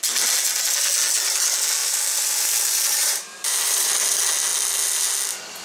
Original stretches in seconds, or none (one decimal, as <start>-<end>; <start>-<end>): 0.0-1.8; 3.9-5.6